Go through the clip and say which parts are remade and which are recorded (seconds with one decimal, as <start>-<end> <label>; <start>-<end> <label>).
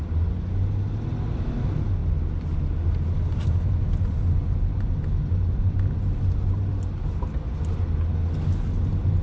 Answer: 0.0-9.2 recorded